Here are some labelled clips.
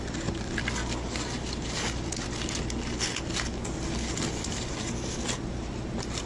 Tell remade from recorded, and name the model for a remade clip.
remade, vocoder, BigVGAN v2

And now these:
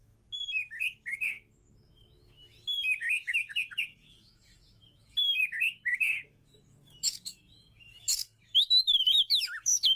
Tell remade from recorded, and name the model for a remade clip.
remade, autoencoder, DAC-VAE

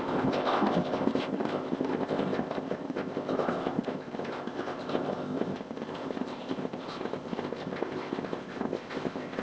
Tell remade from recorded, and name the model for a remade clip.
remade, codec, ZipCodec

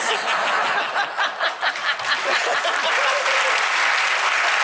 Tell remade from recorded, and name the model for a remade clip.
recorded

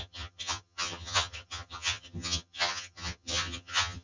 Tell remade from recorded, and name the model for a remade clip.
remade, vocoder, HiFi-GAN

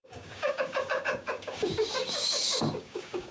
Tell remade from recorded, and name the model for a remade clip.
remade, codec, DAC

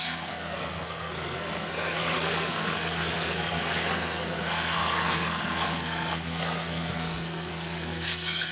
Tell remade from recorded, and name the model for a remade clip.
remade, codec, SNAC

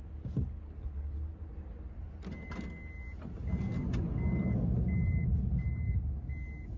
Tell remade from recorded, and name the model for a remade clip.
recorded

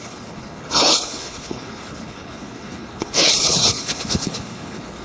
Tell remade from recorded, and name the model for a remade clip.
remade, codec, HILCodec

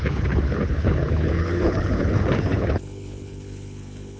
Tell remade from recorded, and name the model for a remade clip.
remade, codec, HILCodec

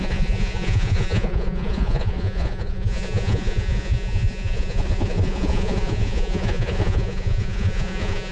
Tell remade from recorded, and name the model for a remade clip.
remade, vocoder, Vocos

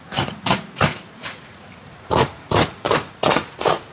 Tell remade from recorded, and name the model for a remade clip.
remade, vocoder, Vocos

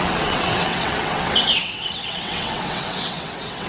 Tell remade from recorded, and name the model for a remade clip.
remade, vocoder, WaveNeXt